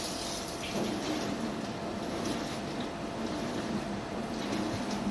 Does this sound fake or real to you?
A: real